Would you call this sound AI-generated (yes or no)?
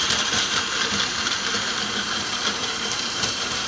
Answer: yes